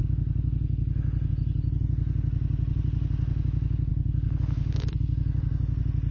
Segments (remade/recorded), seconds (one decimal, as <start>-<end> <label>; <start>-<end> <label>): 0.0-3.9 recorded; 3.9-5.5 remade; 5.5-6.1 recorded